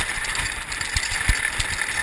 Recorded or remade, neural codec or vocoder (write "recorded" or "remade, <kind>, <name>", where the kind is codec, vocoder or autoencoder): recorded